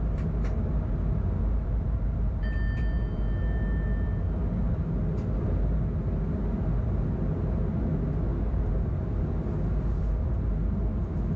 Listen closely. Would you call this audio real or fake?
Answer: real